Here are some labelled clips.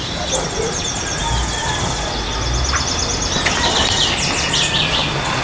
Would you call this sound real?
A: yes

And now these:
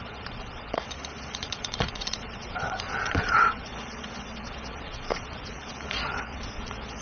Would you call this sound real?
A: no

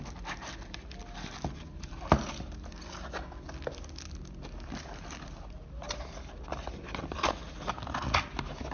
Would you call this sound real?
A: yes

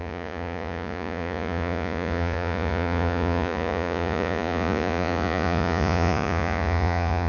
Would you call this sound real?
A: no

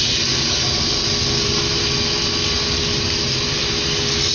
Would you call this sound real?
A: yes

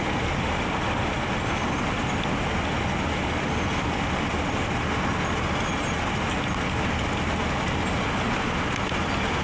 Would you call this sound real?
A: yes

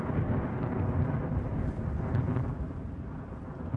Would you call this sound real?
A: yes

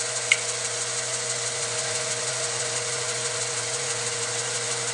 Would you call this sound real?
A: no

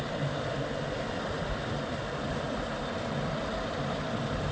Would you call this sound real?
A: yes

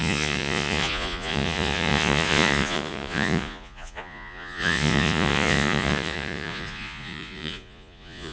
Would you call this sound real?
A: no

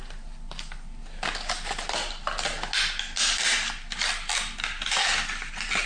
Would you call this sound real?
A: yes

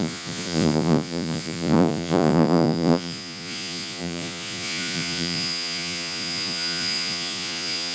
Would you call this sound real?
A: no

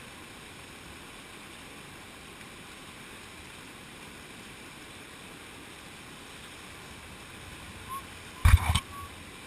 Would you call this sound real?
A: yes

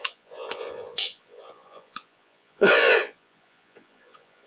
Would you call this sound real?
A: no